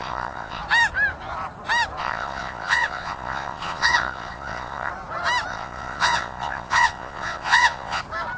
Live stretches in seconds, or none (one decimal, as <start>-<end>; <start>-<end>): 0.6-2.0; 4.9-5.5; 8.0-8.4